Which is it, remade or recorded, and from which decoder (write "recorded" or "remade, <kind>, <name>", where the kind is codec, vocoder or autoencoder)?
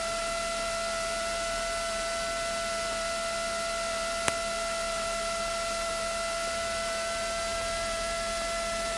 recorded